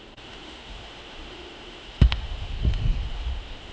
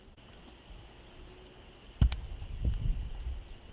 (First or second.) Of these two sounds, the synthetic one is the first